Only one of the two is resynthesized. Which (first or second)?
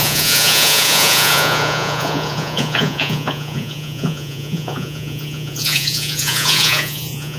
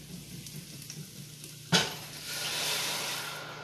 first